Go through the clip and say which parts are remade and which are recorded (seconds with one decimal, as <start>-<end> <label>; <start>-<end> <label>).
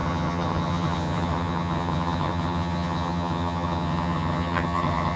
0.0-5.2 remade